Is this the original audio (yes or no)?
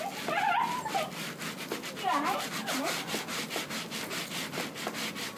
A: yes